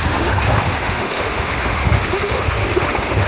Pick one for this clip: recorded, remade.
remade